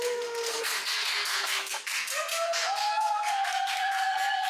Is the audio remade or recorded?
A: remade